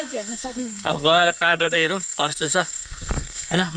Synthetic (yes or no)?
yes